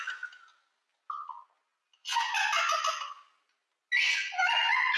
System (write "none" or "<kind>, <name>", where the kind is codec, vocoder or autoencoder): none